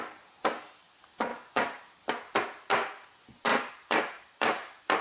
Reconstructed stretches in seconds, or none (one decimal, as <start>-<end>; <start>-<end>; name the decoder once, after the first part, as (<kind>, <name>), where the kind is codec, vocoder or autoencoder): 1.3-2.1 (vocoder, BigVGAN v2); 3.5-5.0